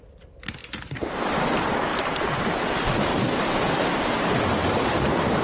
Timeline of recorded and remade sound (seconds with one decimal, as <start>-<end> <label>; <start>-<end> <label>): 0.0-0.6 recorded; 0.6-1.2 remade; 1.2-1.9 recorded; 1.9-5.4 remade